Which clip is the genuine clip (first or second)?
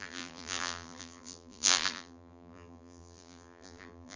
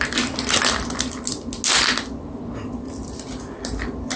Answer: second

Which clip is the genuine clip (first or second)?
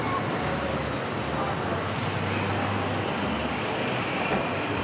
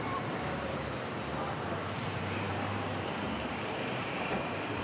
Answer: first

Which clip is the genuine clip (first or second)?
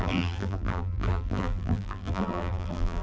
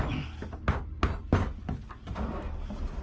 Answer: second